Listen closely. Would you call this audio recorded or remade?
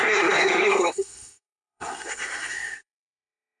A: remade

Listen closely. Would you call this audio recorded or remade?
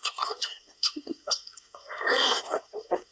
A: remade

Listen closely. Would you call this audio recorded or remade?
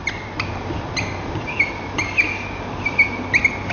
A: recorded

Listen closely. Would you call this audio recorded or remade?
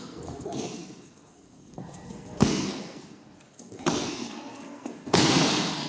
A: remade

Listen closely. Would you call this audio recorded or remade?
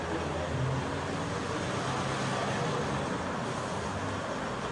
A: recorded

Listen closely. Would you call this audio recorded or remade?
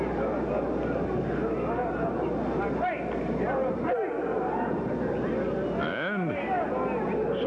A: recorded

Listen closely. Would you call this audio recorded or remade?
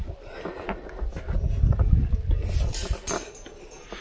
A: recorded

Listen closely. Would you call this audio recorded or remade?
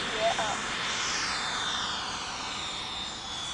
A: recorded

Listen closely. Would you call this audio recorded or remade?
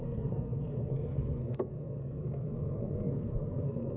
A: remade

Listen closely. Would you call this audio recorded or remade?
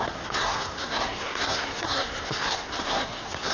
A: remade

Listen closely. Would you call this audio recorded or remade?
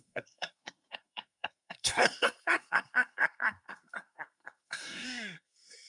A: remade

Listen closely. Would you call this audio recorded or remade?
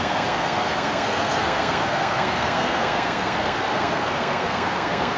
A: remade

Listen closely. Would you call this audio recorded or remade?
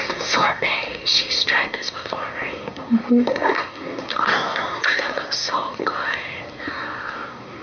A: remade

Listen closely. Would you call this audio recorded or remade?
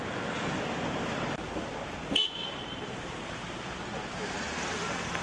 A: recorded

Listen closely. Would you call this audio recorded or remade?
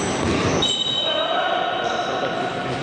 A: recorded